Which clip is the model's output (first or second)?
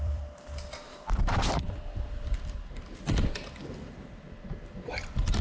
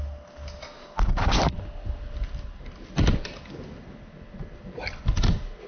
first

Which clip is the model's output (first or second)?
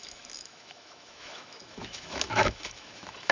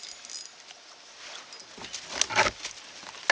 first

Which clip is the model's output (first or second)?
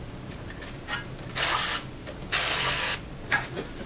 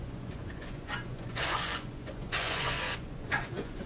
second